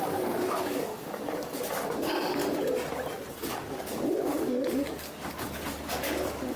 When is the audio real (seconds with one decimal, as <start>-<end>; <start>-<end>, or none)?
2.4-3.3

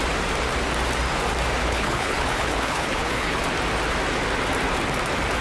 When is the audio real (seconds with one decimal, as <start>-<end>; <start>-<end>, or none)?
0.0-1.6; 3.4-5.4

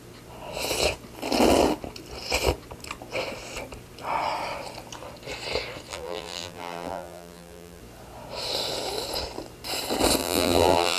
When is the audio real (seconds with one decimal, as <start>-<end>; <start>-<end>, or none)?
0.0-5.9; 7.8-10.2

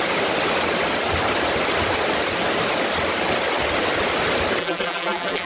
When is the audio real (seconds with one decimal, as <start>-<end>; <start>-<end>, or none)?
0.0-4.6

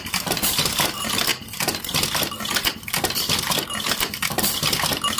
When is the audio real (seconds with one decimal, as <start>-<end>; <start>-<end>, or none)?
1.3-4.1

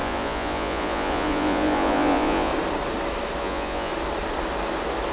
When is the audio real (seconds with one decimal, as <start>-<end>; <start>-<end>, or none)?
2.5-3.4; 3.9-5.1